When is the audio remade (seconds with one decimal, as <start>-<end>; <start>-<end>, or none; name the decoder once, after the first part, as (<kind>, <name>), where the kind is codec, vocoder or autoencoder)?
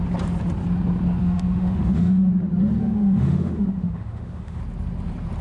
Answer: 1.2-2.3 (autoencoder, DAC-VAE); 2.8-4.6